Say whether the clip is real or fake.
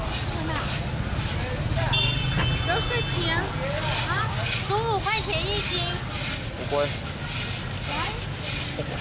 real